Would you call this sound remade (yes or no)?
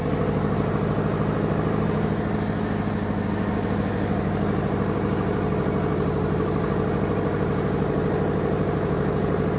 no